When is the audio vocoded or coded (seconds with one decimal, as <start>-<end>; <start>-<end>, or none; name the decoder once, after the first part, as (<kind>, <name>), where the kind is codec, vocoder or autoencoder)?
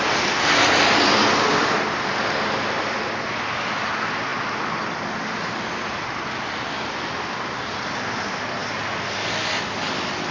none